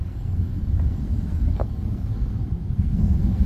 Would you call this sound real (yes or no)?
no